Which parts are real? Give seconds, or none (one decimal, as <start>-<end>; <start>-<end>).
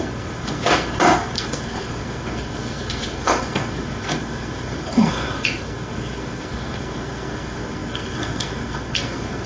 none